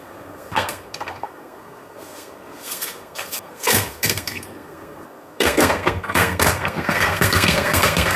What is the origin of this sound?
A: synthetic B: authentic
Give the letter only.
A